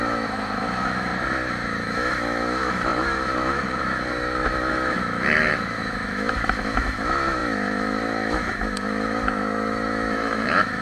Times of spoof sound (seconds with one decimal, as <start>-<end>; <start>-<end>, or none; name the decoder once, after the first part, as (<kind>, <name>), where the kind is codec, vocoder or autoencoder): 0.0-1.1 (autoencoder, DAC-VAE); 1.8-10.8